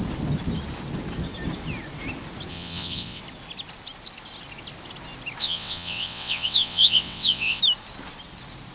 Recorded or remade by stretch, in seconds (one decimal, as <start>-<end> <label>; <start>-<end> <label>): 0.0-2.5 recorded; 2.5-3.2 remade; 3.2-5.4 recorded; 5.4-7.6 remade; 7.6-8.7 recorded